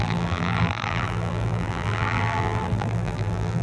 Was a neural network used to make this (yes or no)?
yes